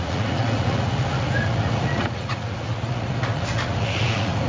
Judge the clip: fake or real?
fake